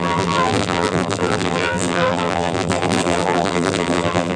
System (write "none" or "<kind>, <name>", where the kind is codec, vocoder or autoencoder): vocoder, BigVGAN v2